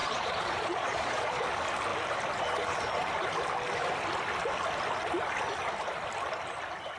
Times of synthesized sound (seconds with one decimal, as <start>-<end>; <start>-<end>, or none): 0.0-1.4